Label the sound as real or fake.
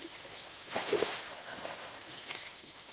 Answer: fake